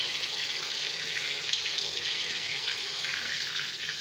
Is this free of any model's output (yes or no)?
no